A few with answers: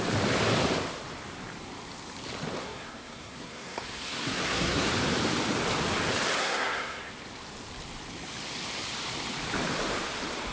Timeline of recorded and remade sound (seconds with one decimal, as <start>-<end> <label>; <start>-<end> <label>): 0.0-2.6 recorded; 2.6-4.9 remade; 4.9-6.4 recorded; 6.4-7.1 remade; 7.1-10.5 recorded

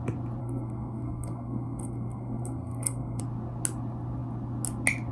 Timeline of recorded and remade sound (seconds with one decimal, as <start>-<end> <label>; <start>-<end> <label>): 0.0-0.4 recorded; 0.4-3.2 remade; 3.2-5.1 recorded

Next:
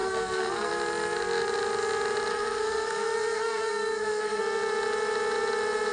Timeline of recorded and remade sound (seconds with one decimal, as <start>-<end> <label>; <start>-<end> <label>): 0.0-0.7 remade; 0.7-2.3 recorded; 2.3-4.4 remade; 4.4-5.9 recorded

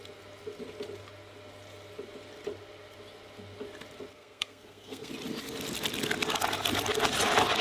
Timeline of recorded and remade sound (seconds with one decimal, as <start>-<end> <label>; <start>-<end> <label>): 0.0-4.1 recorded; 4.1-5.1 remade; 5.1-7.6 recorded